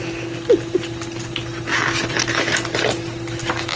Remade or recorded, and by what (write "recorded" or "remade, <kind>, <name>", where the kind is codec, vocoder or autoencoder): recorded